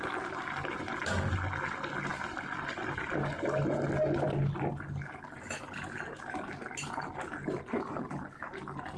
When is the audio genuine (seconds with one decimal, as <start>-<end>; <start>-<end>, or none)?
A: 0.0-9.0